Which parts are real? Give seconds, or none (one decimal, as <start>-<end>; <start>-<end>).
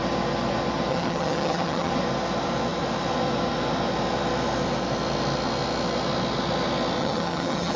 0.0-0.9; 1.9-7.0